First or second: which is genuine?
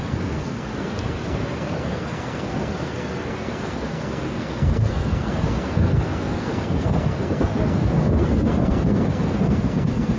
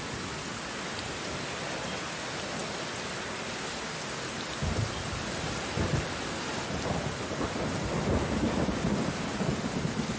second